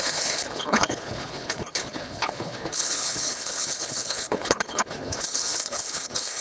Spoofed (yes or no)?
yes